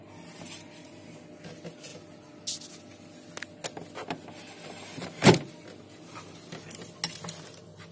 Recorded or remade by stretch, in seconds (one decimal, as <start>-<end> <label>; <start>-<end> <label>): 0.0-7.9 recorded